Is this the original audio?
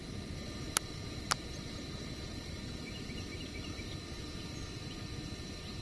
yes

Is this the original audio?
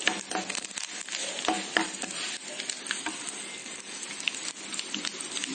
yes